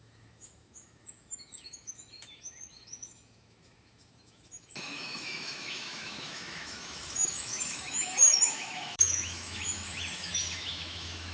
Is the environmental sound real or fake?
fake